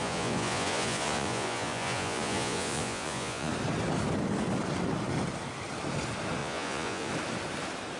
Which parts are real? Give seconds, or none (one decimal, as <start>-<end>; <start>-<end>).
3.5-6.4; 7.1-8.0